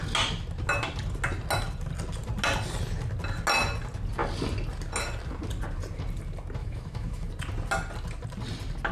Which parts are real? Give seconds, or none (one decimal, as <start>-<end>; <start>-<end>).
0.0-6.6; 7.3-8.9